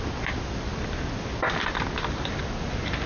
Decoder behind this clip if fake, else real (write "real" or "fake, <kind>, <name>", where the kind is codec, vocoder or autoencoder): real